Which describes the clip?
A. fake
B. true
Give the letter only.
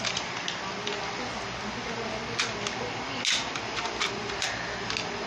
B